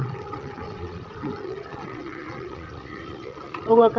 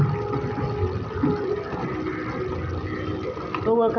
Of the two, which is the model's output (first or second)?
first